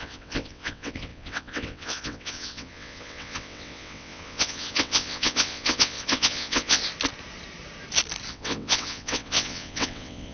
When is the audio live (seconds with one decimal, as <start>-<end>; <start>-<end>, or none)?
6.8-8.3